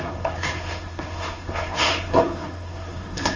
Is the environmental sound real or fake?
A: fake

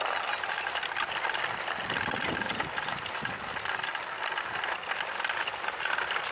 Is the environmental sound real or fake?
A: real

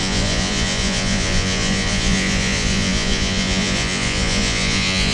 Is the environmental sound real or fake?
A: fake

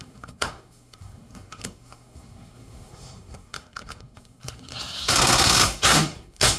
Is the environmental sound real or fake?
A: fake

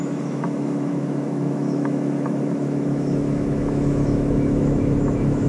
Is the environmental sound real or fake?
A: fake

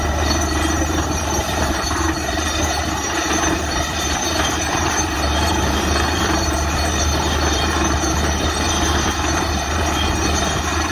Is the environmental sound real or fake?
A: fake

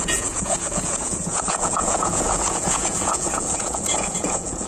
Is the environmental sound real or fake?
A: fake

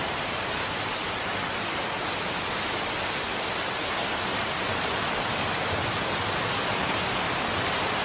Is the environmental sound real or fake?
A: real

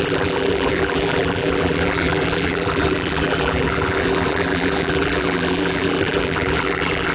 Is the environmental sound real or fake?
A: fake